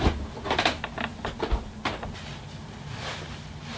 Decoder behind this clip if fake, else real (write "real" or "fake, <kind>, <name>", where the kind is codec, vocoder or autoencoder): real